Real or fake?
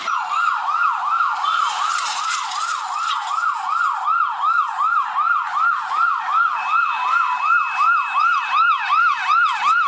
real